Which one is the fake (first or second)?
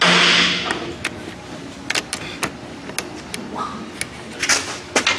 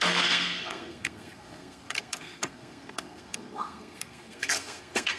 second